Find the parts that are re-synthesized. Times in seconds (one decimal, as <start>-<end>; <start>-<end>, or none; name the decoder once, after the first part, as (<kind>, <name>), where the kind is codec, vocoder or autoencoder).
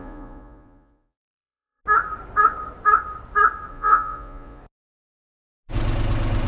0.0-1.8 (vocoder, Vocos); 3.7-4.6